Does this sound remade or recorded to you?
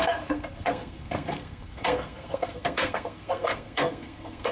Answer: remade